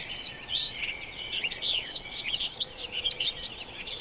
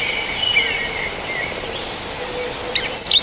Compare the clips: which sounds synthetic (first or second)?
first